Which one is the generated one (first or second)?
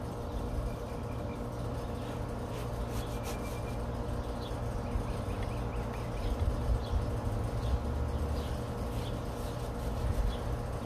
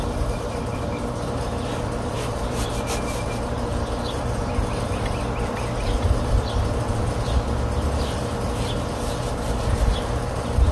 second